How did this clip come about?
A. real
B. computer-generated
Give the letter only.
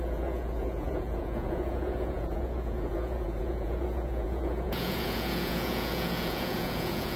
B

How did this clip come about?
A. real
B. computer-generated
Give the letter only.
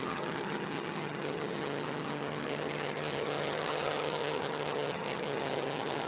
B